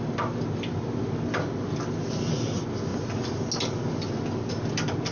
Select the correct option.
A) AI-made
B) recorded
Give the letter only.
B